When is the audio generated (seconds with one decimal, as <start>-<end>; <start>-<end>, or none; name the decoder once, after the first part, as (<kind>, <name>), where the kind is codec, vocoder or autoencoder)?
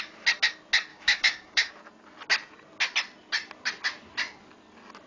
0.9-1.7 (codec, DAC)